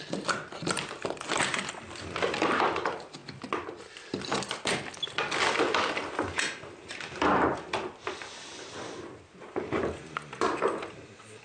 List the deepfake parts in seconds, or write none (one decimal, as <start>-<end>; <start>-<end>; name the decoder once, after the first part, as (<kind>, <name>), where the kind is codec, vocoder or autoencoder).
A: none